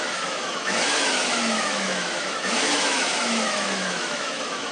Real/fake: fake